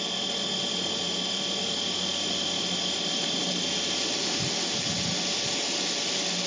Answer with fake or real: real